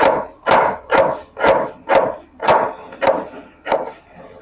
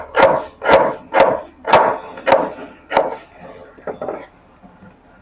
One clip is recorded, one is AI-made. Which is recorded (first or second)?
second